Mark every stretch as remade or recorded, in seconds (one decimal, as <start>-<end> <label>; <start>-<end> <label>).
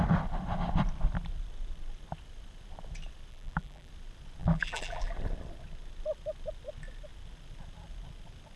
0.0-3.3 recorded; 3.3-3.9 remade; 3.9-4.4 recorded; 4.4-5.1 remade; 5.1-8.6 recorded